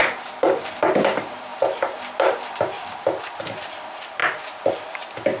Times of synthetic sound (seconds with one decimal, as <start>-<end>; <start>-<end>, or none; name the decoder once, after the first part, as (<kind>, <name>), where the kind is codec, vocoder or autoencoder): none